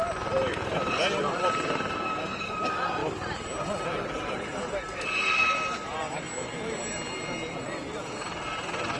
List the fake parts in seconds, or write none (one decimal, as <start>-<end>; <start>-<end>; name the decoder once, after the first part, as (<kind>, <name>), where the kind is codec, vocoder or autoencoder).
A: none